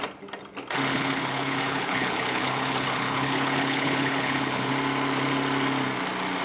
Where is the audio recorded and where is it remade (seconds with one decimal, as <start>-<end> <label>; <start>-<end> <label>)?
0.0-0.9 recorded; 0.9-4.7 remade; 4.7-6.4 recorded